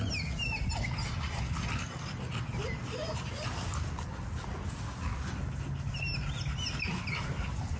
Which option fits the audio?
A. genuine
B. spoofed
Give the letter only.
A